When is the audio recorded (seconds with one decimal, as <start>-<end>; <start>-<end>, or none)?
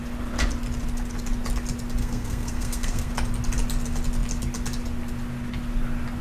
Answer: 0.0-2.0; 3.1-6.2